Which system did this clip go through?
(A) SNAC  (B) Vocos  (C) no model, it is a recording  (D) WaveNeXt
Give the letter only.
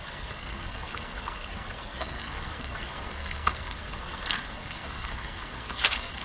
A